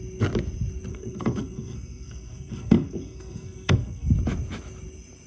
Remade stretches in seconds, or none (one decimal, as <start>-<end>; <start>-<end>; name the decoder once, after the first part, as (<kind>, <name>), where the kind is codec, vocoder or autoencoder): 0.9-4.1 (codec, SNAC)